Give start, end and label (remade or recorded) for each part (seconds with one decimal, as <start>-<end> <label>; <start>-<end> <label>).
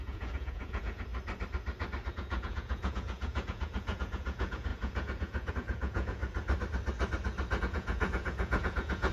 0.0-1.1 remade; 1.1-2.1 recorded; 2.1-6.2 remade; 6.2-7.6 recorded; 7.6-9.1 remade